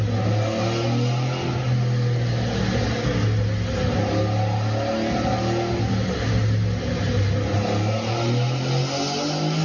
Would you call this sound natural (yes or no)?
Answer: yes